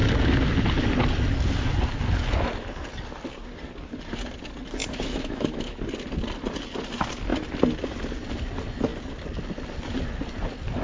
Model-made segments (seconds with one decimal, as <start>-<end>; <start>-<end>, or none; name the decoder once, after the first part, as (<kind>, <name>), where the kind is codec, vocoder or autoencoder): 4.8-5.8 (autoencoder, DAC-VAE)